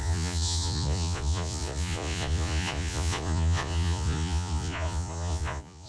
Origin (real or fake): fake